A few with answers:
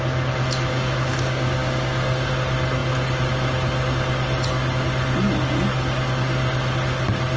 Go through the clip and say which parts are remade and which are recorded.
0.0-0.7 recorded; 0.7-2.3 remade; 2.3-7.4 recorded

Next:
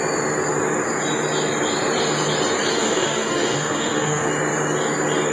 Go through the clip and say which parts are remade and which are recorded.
0.0-2.7 recorded; 2.7-4.3 remade; 4.3-5.3 recorded

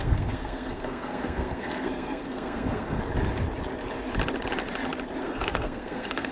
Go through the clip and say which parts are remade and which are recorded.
0.0-3.0 remade; 3.0-5.2 recorded; 5.2-6.3 remade

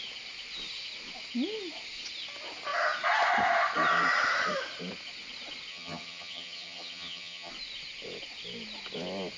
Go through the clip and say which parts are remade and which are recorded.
0.0-5.7 recorded; 5.7-7.5 remade; 7.5-9.4 recorded

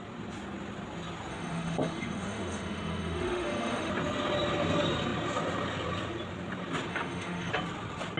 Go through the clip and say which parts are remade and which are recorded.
0.0-1.3 recorded; 1.3-3.9 remade; 3.9-6.9 recorded; 6.9-7.5 remade; 7.5-8.2 recorded

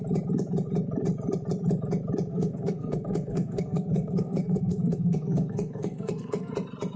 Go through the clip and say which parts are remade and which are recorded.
0.0-2.3 recorded; 2.3-6.5 remade; 6.5-7.0 recorded

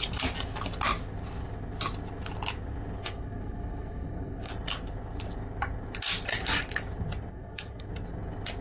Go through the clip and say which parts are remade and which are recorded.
0.0-3.0 recorded; 3.0-4.5 remade; 4.5-7.3 recorded; 7.3-7.9 remade; 7.9-8.6 recorded

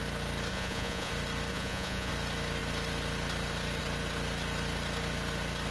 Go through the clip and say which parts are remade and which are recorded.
0.0-0.5 recorded; 0.5-1.1 remade; 1.1-1.5 recorded; 1.5-2.1 remade; 2.1-5.7 recorded